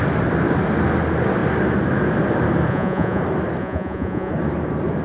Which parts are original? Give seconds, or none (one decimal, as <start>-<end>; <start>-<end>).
0.0-2.7; 3.2-3.6; 4.3-5.0